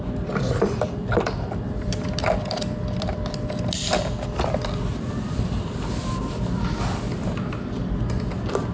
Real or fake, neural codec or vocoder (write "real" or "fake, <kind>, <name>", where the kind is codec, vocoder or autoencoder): real